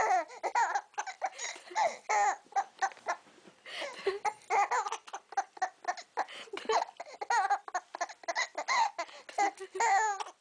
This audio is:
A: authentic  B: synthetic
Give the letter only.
A